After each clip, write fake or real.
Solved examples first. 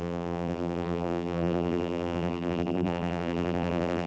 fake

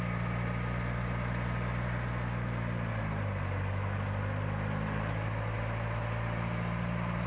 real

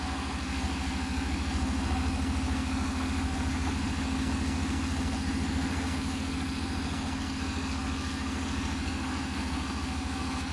fake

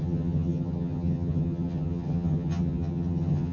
fake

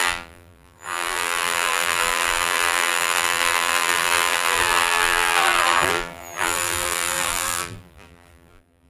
fake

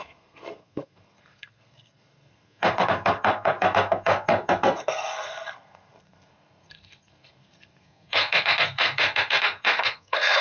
fake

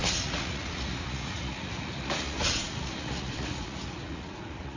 fake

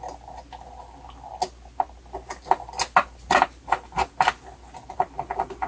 real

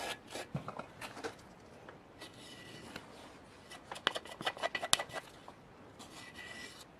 real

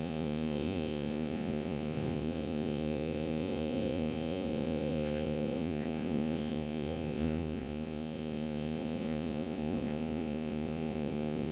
fake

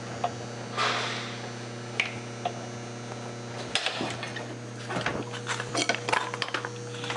real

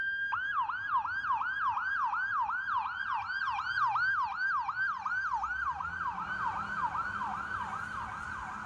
real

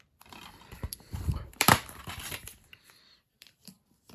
fake